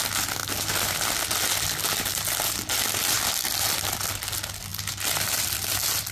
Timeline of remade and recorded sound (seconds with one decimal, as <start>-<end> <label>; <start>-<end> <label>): 0.0-6.1 recorded